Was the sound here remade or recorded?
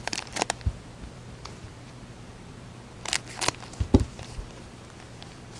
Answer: remade